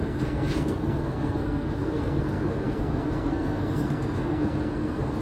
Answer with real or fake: fake